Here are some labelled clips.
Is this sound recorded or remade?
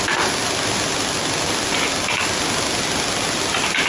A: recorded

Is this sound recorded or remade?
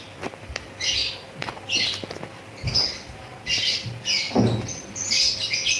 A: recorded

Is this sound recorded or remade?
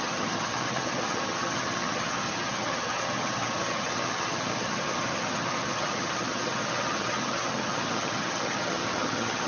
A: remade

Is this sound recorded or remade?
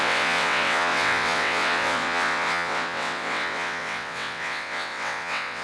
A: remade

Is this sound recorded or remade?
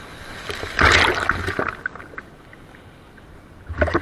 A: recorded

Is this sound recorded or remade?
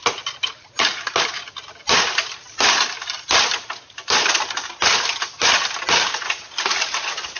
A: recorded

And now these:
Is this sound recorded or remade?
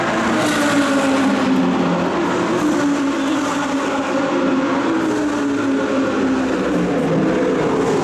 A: recorded